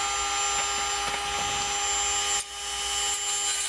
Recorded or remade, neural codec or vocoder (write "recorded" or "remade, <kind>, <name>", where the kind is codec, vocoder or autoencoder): recorded